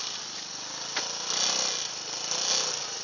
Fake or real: real